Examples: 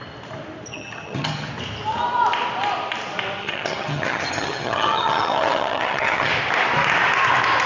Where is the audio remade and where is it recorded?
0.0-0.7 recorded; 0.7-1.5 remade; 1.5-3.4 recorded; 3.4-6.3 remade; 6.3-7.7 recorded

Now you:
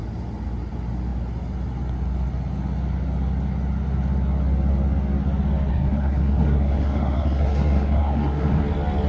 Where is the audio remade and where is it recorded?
0.0-5.7 recorded; 5.7-8.6 remade; 8.6-9.1 recorded

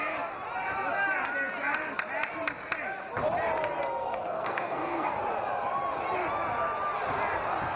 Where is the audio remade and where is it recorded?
0.0-3.9 recorded; 3.9-5.1 remade; 5.1-7.8 recorded